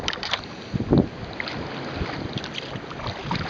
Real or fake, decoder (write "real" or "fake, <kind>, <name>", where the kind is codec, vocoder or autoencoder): real